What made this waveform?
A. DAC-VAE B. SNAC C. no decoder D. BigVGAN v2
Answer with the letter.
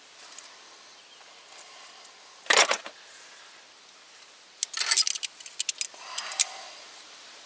C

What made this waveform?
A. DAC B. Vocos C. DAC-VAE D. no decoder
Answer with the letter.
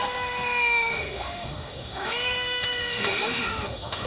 C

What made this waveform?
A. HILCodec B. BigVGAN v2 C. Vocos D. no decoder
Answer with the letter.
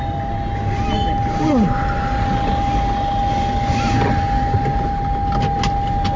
D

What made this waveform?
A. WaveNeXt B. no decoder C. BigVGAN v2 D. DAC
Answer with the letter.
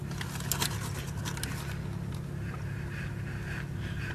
B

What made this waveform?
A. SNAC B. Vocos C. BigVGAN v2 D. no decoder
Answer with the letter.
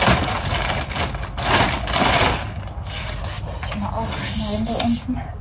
D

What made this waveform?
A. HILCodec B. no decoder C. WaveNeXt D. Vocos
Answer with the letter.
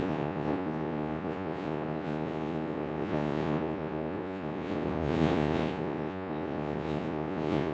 D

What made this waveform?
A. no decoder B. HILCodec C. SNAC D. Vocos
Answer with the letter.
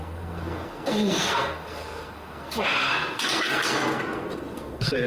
C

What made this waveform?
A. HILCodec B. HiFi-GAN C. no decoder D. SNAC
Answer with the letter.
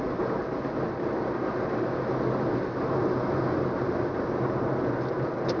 C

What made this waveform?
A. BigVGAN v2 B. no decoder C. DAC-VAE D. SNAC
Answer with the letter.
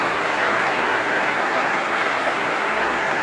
D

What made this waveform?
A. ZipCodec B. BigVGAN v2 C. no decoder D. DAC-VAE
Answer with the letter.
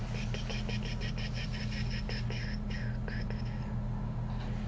C